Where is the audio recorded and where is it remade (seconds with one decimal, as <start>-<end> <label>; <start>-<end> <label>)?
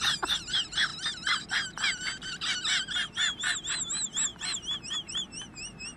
0.0-6.0 recorded